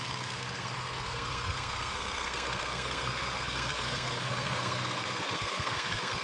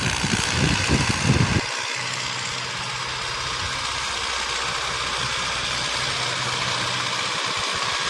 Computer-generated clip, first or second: first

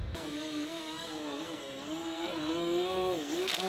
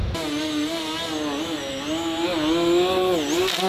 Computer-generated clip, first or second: first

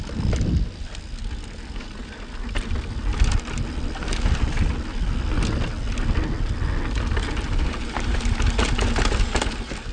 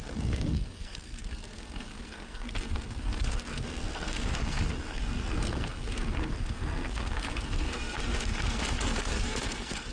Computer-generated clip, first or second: second